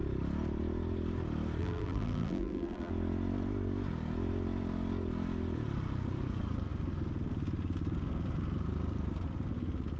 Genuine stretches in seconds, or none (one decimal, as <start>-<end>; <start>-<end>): 0.0-1.6; 2.9-10.0